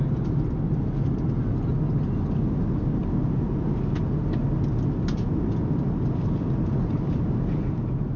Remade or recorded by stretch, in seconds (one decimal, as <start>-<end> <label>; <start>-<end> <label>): 0.0-8.2 recorded